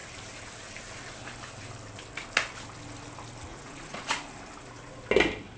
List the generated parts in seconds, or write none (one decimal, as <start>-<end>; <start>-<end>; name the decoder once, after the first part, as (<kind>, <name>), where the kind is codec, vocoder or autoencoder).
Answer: 3.5-4.2 (vocoder, Vocos)